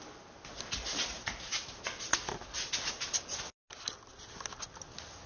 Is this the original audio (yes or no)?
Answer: yes